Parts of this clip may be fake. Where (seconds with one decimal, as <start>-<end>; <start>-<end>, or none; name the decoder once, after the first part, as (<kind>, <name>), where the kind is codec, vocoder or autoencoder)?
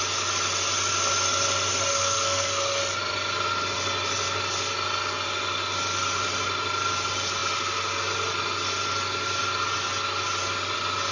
1.9-2.8 (codec, SNAC)